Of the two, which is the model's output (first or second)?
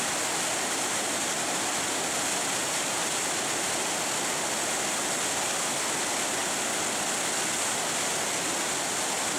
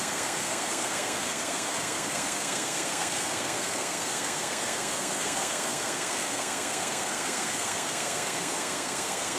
second